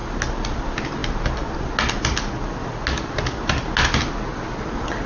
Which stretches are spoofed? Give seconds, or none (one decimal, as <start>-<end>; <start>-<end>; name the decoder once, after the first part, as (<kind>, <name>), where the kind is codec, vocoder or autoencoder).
none